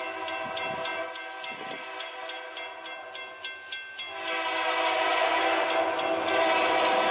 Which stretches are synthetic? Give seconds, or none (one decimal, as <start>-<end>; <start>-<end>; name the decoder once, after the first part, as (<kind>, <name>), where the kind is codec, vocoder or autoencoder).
none

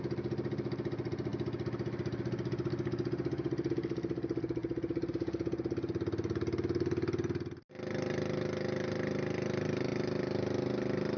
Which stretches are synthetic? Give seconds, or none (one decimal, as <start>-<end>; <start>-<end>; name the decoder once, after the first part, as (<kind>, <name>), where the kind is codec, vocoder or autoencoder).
none

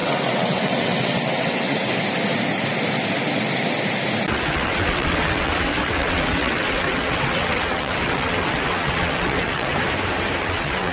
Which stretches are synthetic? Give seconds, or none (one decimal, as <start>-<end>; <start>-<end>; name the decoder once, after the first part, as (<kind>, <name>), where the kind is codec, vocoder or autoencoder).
0.0-1.9 (vocoder, WaveNeXt); 4.3-9.7; 10.4-10.9

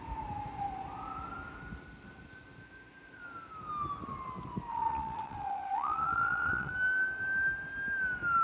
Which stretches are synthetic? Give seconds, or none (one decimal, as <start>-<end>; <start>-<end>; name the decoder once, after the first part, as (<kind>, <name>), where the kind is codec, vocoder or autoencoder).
4.7-6.7 (vocoder, WaveNeXt)

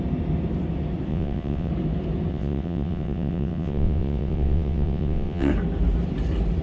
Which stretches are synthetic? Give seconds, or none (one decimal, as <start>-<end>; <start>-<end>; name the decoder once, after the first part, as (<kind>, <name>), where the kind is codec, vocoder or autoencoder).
1.1-1.7 (vocoder, WaveNeXt); 2.3-5.5